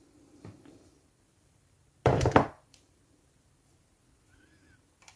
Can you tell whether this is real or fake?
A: fake